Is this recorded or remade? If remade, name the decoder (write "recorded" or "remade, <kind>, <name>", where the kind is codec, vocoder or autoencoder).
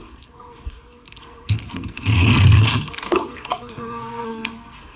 remade, codec, SNAC